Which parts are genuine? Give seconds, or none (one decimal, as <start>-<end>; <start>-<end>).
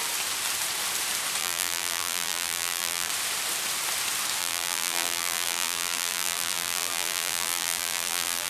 0.0-1.4; 3.1-4.4